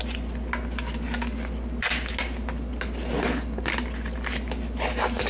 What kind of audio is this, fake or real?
real